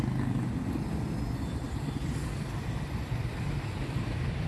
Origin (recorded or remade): recorded